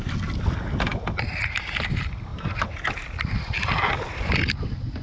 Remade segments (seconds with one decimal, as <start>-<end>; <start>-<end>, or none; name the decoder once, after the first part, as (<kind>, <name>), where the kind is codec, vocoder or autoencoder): none